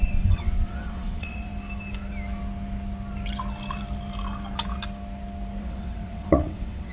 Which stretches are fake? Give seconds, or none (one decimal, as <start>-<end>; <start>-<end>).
0.0-1.5; 5.6-6.9